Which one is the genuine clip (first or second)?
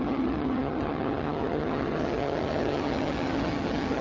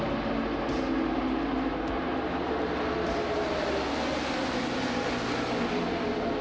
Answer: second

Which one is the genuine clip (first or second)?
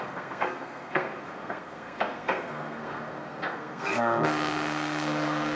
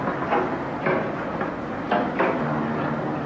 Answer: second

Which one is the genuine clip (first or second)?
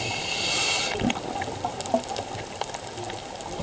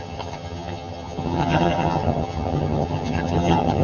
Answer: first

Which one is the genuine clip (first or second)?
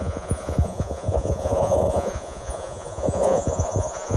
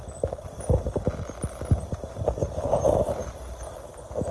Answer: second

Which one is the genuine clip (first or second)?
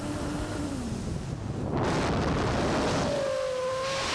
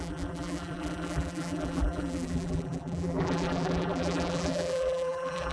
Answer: first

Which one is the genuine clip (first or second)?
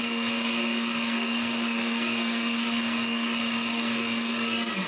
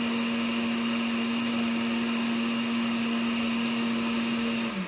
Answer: second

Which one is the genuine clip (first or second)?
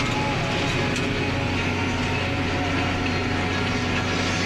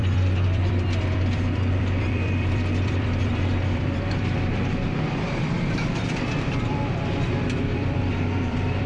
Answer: first